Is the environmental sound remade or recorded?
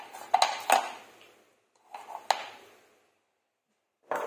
recorded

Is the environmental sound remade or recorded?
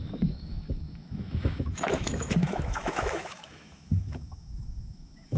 remade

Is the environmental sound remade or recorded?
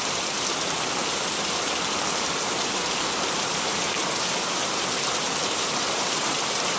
remade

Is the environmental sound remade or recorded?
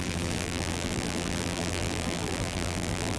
remade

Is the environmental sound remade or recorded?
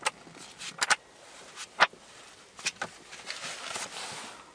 recorded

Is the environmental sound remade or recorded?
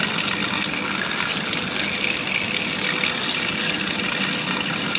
recorded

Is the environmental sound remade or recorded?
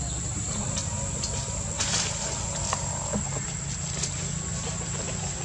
recorded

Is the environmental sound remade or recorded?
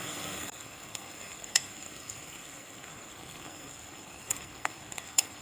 remade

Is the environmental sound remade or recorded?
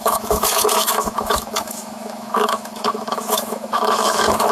remade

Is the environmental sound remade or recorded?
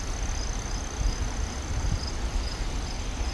recorded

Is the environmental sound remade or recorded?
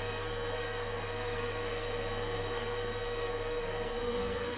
remade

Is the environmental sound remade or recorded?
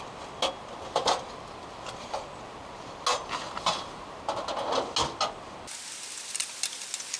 recorded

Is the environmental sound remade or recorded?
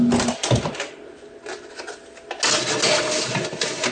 recorded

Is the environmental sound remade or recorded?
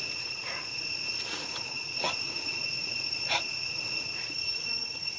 remade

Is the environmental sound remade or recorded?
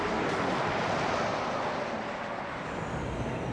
recorded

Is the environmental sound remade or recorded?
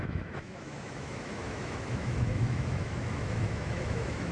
remade